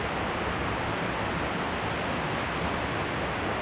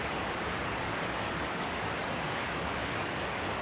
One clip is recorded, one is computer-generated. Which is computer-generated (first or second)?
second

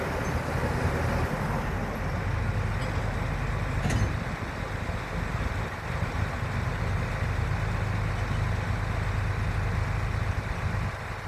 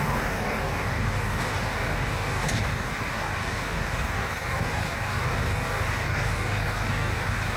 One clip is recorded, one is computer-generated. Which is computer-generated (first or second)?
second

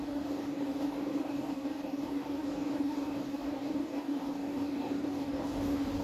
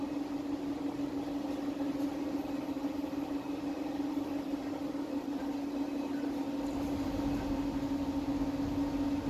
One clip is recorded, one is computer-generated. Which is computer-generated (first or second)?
first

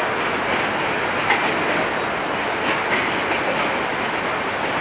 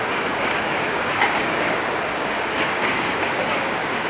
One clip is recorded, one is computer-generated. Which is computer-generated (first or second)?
second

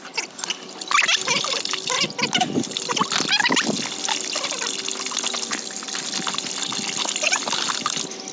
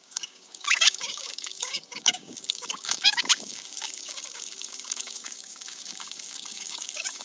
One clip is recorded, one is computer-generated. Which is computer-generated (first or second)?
second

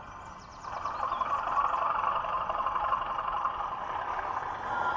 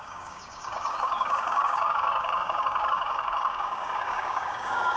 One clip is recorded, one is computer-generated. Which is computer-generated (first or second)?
second